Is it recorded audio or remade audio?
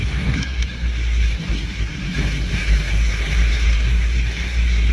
remade